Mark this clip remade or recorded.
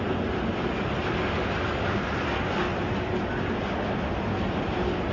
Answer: recorded